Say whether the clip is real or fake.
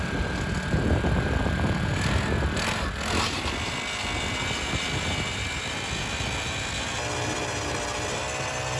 real